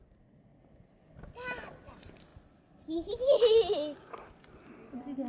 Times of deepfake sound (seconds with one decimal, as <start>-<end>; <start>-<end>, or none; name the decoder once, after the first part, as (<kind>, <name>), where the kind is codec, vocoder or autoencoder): none